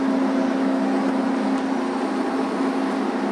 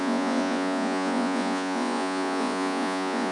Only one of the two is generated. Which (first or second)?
second